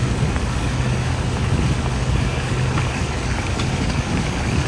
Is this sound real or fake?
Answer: fake